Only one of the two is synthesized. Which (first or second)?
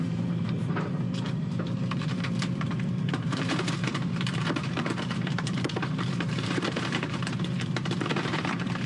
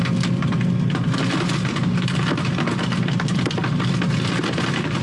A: first